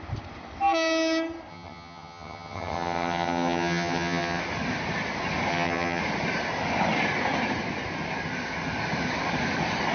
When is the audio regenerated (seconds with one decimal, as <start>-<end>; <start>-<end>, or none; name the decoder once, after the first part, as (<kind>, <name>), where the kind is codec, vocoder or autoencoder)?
1.5-4.4 (vocoder, HiFi-GAN); 5.5-6.0